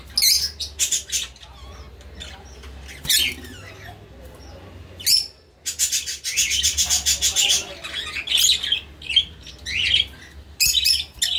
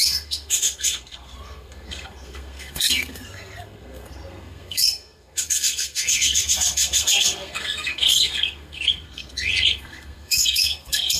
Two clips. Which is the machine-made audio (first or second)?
second